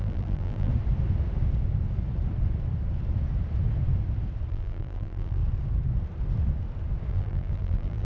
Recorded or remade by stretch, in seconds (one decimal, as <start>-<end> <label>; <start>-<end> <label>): 0.0-0.7 remade; 0.7-4.5 recorded; 4.5-5.4 remade; 5.4-7.1 recorded; 7.1-8.0 remade